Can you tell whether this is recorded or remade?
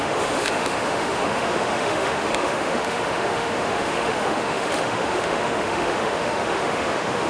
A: remade